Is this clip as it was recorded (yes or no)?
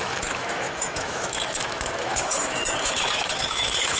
no